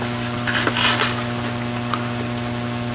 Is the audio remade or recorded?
recorded